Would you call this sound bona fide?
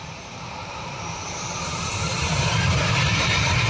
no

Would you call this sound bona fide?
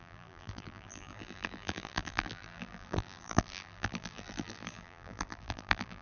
no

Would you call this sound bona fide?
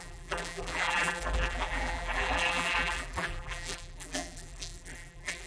no